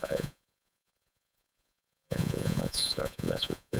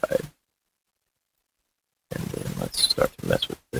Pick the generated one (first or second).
first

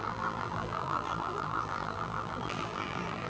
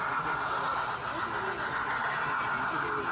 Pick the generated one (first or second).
first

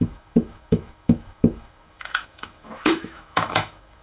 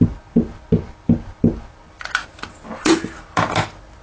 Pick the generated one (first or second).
first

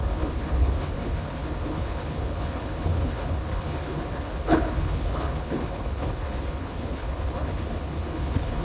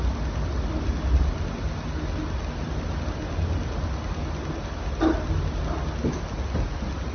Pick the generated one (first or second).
first